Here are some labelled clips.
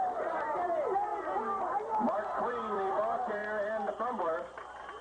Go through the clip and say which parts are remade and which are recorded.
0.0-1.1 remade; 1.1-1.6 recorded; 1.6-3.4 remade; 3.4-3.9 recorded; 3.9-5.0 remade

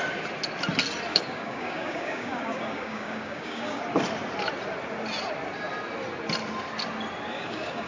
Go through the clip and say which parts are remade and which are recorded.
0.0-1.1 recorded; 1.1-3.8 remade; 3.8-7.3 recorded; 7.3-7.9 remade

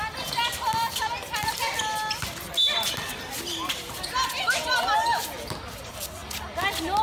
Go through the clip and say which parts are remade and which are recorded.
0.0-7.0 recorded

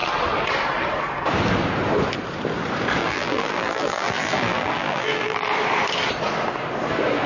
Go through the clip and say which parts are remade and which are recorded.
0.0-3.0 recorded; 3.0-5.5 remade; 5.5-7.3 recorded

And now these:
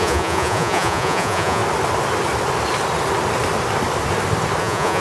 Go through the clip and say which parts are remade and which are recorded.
0.0-1.6 remade; 1.6-4.6 recorded; 4.6-5.0 remade